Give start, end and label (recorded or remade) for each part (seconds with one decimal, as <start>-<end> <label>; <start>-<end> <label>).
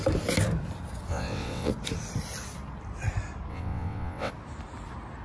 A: 0.0-1.1 recorded; 1.1-1.7 remade; 1.7-3.5 recorded; 3.5-4.3 remade; 4.3-5.2 recorded